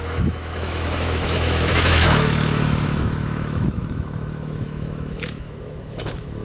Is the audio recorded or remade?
remade